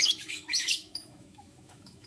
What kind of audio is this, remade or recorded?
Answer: remade